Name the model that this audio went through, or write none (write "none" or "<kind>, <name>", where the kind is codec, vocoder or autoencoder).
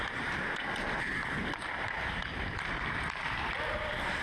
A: none